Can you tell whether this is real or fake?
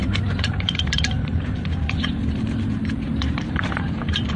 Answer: fake